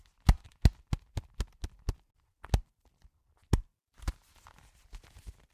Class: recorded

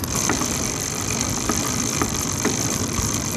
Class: remade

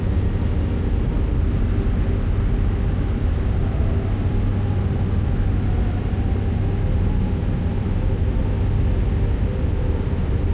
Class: recorded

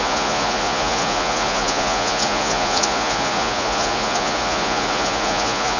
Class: remade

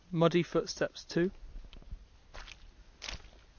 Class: recorded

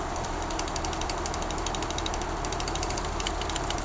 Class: recorded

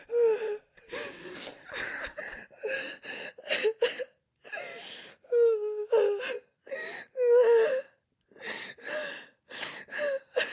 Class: recorded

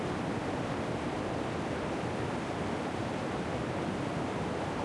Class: recorded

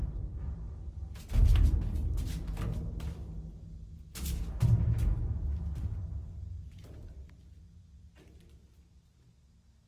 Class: recorded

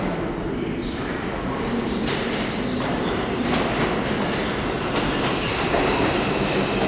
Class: recorded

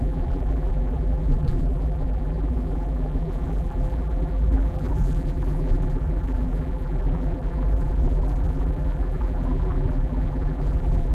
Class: remade